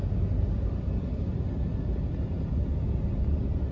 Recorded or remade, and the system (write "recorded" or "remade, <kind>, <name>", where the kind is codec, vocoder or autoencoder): recorded